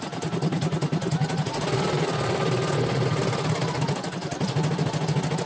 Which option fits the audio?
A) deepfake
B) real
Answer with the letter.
B